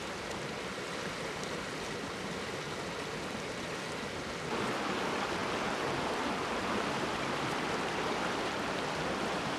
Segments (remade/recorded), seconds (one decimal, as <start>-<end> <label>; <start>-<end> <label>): 0.0-9.6 recorded